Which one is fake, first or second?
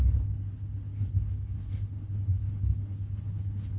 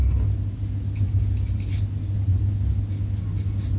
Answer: first